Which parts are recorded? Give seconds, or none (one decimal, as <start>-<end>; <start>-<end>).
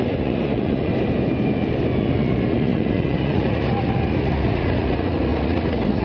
0.9-2.0